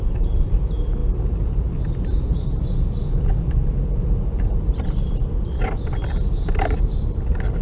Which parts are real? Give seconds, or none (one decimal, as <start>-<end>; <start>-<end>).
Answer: 0.0-7.6